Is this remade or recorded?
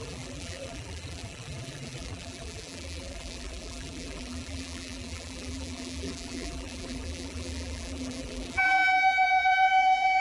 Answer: remade